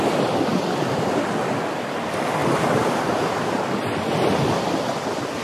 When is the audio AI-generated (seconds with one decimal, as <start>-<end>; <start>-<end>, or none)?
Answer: 2.4-3.5